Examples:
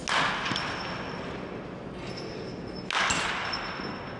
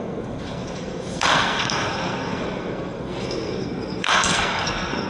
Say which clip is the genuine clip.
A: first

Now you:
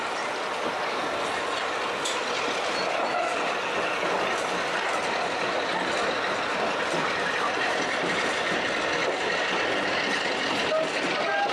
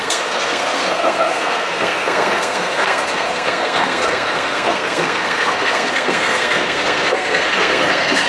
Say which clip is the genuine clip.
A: first